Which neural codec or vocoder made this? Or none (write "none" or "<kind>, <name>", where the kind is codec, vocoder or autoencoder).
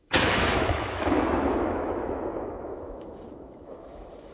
autoencoder, DAC-VAE